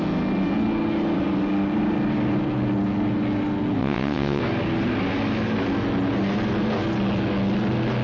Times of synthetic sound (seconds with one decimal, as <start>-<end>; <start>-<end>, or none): 3.8-4.4